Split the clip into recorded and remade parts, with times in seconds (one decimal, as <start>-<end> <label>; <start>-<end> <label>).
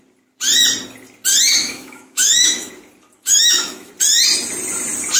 0.0-1.6 recorded; 1.6-2.7 remade; 2.7-3.3 recorded; 3.3-3.9 remade; 3.9-5.2 recorded